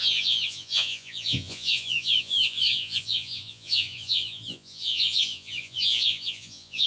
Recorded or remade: remade